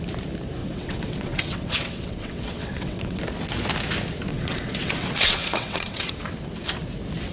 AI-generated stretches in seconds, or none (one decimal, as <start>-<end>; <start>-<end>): 0.6-3.2; 4.3-6.1